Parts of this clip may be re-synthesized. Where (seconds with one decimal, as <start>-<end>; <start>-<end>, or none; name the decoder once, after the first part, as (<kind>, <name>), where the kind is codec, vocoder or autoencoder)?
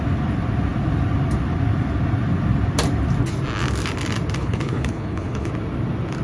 4.4-5.5 (codec, HILCodec)